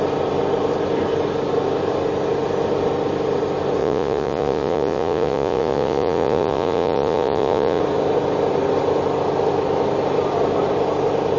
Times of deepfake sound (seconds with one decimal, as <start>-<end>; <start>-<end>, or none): 3.8-7.8